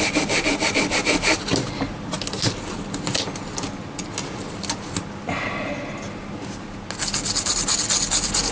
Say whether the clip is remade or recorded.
recorded